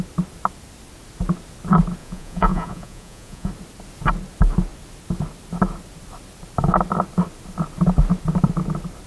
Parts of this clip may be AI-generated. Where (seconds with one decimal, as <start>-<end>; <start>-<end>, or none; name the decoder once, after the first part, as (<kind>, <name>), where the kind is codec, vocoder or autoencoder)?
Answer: 2.0-3.5 (vocoder, Vocos)